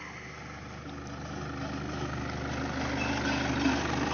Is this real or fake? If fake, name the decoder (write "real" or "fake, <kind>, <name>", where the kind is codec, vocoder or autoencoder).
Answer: real